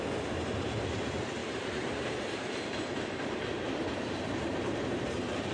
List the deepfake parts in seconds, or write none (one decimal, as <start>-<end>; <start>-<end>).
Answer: 0.0-5.5

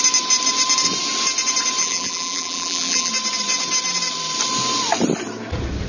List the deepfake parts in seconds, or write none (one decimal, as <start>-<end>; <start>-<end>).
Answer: 1.8-3.1

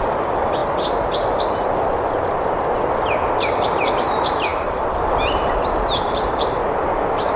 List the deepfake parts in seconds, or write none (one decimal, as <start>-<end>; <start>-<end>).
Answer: 0.0-0.6; 3.3-7.4

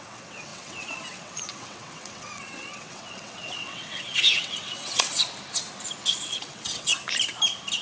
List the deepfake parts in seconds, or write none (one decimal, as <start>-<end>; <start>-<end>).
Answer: 0.0-5.2; 6.2-6.9

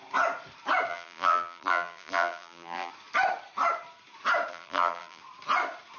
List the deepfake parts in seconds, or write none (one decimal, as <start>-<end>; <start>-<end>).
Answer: 0.9-2.9; 4.5-5.2

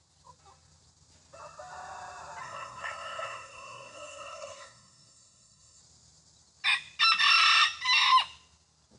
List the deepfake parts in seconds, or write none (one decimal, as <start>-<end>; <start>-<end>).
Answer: 2.4-5.8

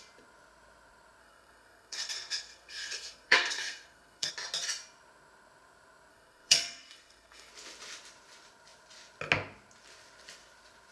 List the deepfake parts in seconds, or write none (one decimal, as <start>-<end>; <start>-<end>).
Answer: 1.2-4.3; 6.1-7.5